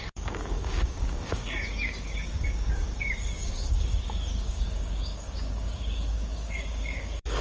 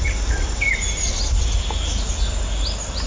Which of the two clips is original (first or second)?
second